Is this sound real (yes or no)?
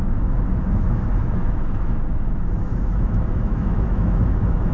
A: no